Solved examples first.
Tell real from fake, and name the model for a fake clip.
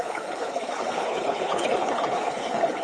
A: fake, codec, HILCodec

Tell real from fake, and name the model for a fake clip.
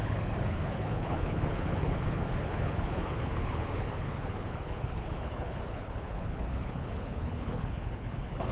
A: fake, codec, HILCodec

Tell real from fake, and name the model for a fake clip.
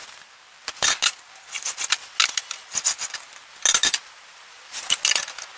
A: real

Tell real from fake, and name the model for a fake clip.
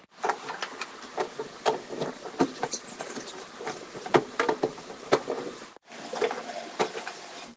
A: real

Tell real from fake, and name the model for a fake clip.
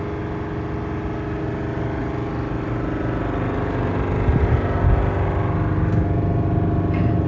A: real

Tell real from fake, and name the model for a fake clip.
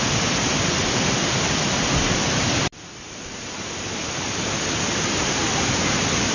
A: real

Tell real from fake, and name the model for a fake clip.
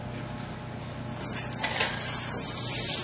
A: real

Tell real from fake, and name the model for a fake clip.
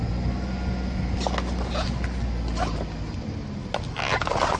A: real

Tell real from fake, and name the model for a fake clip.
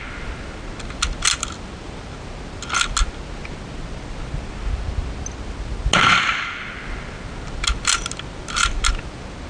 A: real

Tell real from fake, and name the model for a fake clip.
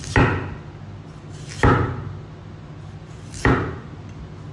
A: real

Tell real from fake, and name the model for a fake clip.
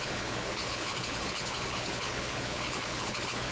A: fake, codec, HILCodec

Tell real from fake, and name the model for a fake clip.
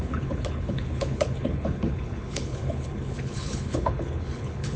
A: fake, codec, HILCodec